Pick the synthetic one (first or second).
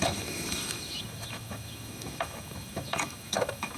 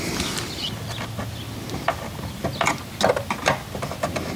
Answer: first